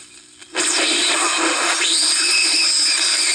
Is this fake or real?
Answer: real